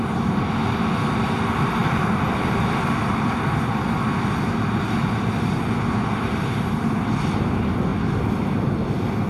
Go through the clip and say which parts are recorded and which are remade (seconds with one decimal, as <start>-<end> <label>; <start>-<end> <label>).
0.0-1.8 recorded; 1.8-4.3 remade; 4.3-9.3 recorded